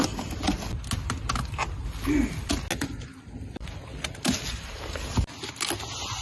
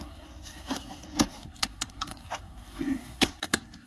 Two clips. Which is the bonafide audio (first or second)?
first